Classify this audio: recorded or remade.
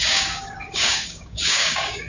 remade